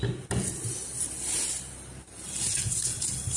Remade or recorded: recorded